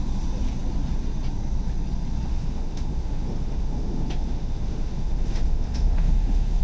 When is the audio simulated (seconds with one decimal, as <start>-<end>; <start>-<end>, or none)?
2.3-6.6